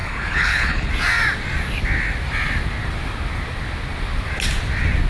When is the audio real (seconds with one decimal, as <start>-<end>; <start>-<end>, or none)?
0.9-5.1